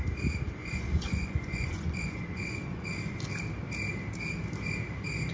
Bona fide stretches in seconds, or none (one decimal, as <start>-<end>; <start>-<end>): 0.0-0.6; 2.9-5.3